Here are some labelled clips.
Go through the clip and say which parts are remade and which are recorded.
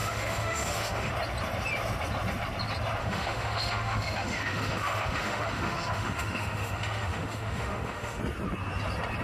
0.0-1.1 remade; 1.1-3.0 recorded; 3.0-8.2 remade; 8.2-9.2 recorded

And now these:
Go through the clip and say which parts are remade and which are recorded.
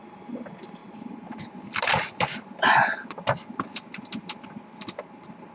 0.0-0.8 recorded; 0.8-1.8 remade; 1.8-5.5 recorded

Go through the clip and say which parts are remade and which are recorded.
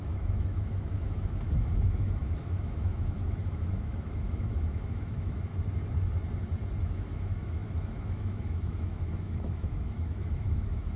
0.0-5.5 remade; 5.5-6.8 recorded; 6.8-11.0 remade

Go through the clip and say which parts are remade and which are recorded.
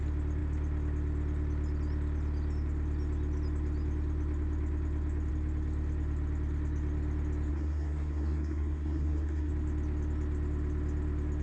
0.0-7.5 recorded; 7.5-9.5 remade; 9.5-11.4 recorded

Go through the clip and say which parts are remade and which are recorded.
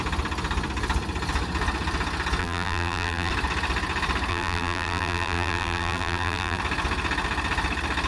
0.0-2.4 recorded; 2.4-3.3 remade; 3.3-4.3 recorded; 4.3-6.6 remade; 6.6-8.1 recorded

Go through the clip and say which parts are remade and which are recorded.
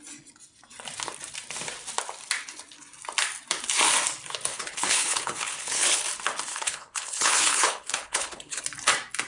0.0-4.5 recorded; 4.5-6.0 remade; 6.0-6.5 recorded; 6.5-8.6 remade; 8.6-9.3 recorded